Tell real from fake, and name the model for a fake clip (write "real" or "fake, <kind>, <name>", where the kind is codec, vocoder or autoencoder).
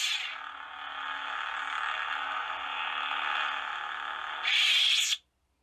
real